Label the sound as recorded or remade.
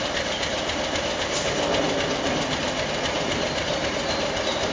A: recorded